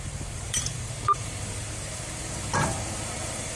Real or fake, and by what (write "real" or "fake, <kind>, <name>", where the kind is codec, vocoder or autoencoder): fake, vocoder, BigVGAN v2